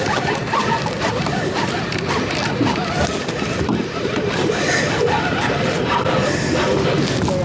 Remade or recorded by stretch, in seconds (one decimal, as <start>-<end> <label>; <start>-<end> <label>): 0.0-7.4 recorded